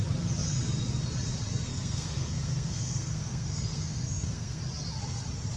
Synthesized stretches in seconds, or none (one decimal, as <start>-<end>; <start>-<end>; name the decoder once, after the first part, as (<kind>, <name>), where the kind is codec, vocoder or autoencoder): 1.7-4.6 (codec, SNAC)